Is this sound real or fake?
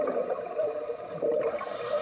fake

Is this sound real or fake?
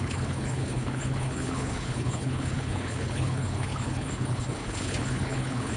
fake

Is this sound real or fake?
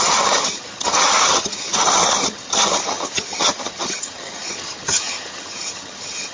fake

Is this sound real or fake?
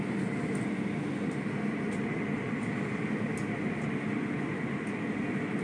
real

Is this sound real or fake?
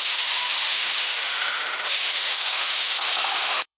fake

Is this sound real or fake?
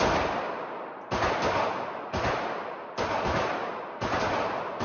real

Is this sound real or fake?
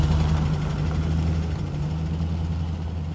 real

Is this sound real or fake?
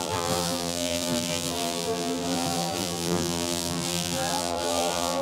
fake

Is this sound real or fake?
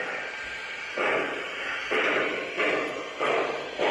real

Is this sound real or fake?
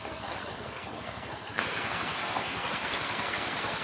fake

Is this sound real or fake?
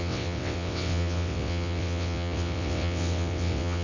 fake